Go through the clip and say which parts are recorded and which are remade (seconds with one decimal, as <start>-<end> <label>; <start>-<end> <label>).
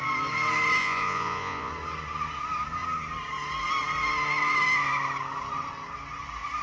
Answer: 0.0-0.8 recorded; 0.8-1.7 remade; 1.7-6.6 recorded